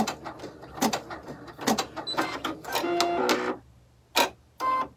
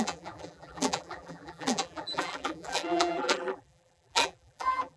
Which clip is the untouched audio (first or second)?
first